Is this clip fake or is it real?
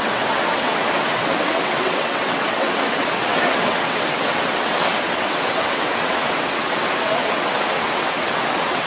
fake